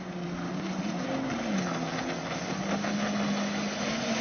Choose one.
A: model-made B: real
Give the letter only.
B